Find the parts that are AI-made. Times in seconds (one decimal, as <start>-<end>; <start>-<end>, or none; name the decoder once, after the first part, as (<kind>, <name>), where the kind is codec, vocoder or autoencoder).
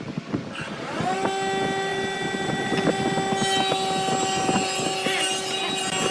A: none